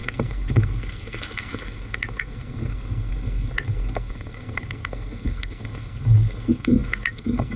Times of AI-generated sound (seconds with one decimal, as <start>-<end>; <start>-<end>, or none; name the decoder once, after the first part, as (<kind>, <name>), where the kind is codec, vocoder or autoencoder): 0.0-7.6 (codec, SNAC)